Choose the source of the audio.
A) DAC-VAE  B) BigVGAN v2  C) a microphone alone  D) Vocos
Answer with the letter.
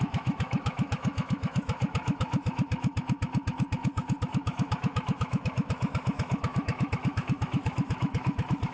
A